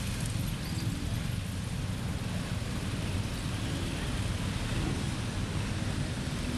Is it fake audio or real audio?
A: real